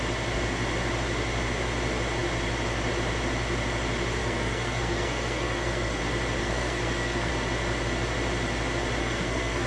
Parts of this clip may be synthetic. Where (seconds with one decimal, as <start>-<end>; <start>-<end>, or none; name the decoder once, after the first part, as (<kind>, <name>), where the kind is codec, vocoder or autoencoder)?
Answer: 4.2-6.0 (codec, SNAC); 6.4-7.3; 9.0-9.7